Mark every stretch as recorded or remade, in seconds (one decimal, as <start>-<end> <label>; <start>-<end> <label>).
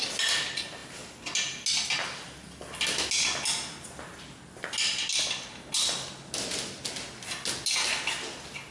0.0-8.7 recorded